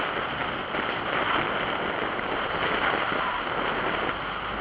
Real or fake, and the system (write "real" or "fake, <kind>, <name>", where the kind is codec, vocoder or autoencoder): real